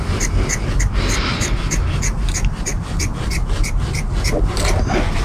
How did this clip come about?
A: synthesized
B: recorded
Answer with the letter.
B